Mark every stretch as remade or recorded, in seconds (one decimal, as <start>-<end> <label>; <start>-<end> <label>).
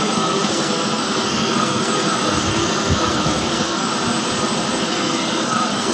0.0-3.9 remade; 3.9-4.8 recorded; 4.8-5.9 remade